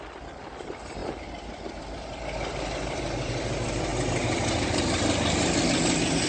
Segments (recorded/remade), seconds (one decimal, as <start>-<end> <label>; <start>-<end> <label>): 0.0-1.0 remade; 1.0-1.8 recorded; 1.8-3.9 remade; 3.9-4.5 recorded; 4.5-6.3 remade